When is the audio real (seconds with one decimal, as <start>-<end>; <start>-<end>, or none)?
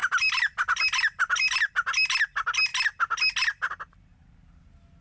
1.7-5.0